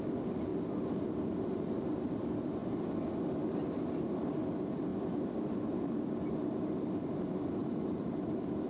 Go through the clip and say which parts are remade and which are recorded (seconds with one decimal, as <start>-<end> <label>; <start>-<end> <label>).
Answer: 0.0-7.6 recorded; 7.6-8.1 remade; 8.1-8.7 recorded